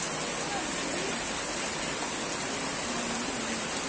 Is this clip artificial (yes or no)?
no